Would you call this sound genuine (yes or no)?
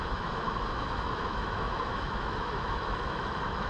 no